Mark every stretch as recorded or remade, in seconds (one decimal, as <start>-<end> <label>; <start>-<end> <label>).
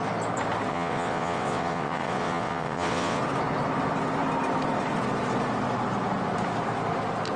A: 0.0-0.7 recorded; 0.7-3.2 remade; 3.2-7.4 recorded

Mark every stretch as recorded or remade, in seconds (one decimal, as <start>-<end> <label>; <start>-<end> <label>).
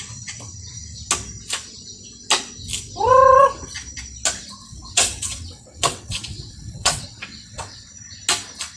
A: 0.0-4.6 recorded; 4.6-7.9 remade; 7.9-8.8 recorded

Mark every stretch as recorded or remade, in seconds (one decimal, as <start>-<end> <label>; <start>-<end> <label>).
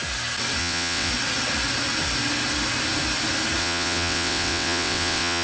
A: 0.0-0.6 recorded; 0.6-1.1 remade; 1.1-3.6 recorded; 3.6-5.4 remade